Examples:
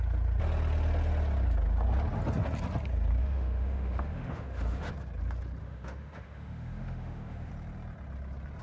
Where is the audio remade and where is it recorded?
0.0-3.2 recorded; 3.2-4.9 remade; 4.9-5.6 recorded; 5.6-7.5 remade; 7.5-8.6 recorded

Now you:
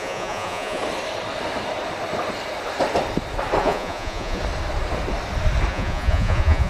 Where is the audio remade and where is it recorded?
0.0-0.8 remade; 0.8-3.6 recorded; 3.6-4.4 remade; 4.4-5.7 recorded; 5.7-6.7 remade

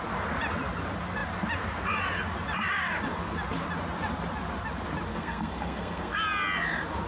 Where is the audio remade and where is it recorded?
0.0-5.1 recorded; 5.1-6.1 remade; 6.1-7.1 recorded